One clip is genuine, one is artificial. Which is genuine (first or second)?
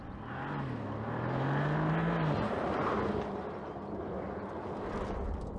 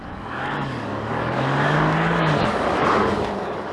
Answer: first